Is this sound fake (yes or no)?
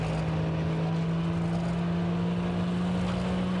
no